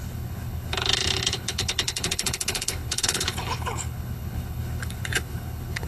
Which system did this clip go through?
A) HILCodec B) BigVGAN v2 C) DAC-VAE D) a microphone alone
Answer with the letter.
A